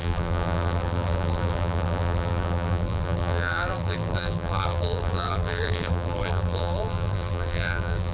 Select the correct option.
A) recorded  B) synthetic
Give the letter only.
B